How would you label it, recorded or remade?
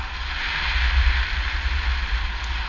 recorded